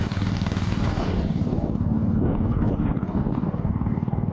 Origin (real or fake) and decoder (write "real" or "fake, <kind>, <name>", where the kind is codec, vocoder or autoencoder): fake, codec, DAC